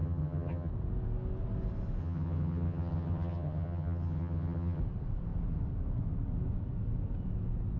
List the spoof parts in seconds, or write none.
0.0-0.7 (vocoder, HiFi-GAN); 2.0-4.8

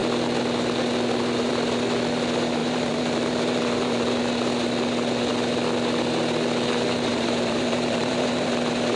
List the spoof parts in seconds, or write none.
2.6-4.2 (vocoder, BigVGAN v2); 7.1-8.5

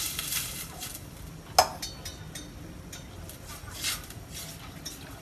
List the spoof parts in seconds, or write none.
0.0-0.9 (vocoder, BigVGAN v2); 1.6-2.1; 4.5-5.2

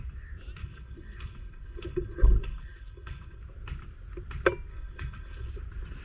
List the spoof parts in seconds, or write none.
0.6-3.4 (codec, HILCodec); 4.7-5.5

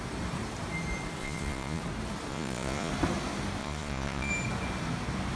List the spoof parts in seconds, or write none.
1.2-1.8 (vocoder, Vocos); 2.3-2.9; 3.6-4.3

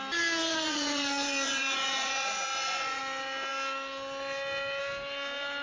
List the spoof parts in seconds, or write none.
0.4-3.0 (vocoder, Vocos)

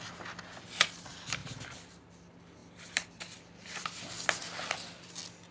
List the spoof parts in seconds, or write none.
none